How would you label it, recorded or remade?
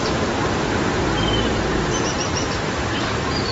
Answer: remade